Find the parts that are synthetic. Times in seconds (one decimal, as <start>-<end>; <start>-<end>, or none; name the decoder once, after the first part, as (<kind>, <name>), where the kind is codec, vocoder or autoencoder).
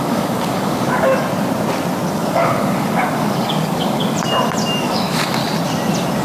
0.0-1.1 (codec, DAC); 2.1-4.0; 4.8-5.4